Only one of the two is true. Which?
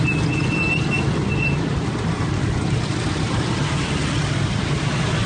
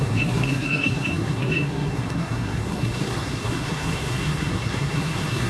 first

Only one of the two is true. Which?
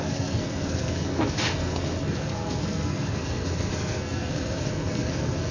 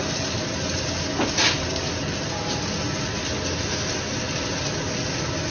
second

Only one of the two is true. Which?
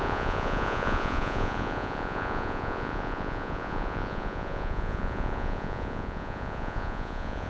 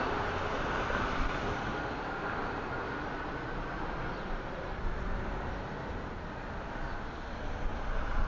second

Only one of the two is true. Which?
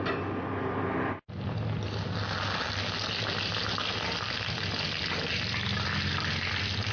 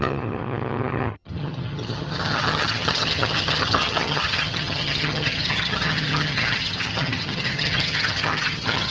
first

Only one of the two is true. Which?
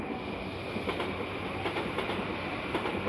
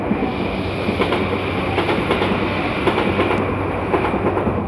second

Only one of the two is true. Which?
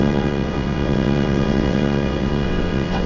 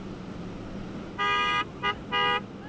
second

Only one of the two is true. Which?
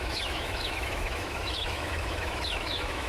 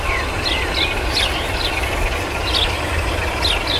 second